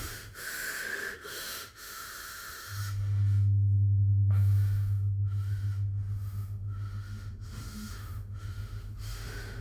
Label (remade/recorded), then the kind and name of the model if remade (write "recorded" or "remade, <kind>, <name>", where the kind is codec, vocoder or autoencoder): remade, autoencoder, DAC-VAE